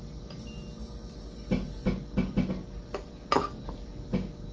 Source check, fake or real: real